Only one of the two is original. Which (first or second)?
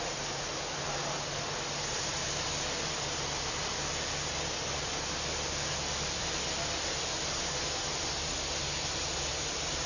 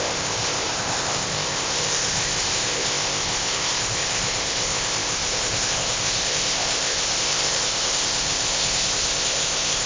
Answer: first